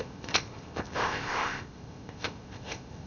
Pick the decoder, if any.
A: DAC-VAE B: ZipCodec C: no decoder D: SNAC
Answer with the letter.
B